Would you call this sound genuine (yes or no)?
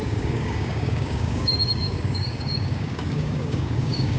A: no